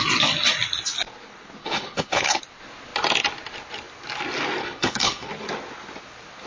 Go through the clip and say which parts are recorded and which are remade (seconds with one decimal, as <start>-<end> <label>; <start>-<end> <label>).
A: 0.0-1.6 recorded; 1.6-2.4 remade; 2.4-4.6 recorded; 4.6-5.3 remade; 5.3-6.5 recorded